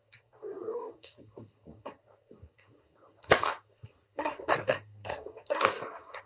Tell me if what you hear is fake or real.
fake